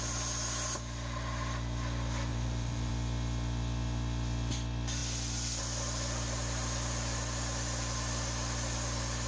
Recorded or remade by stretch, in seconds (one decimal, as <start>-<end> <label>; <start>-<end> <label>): 0.0-2.3 recorded; 2.3-2.9 remade; 2.9-9.3 recorded